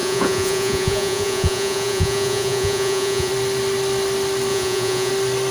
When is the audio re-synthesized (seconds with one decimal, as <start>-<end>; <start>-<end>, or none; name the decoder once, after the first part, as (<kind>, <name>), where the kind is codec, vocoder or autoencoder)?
0.0-3.3 (vocoder, Vocos); 4.5-5.1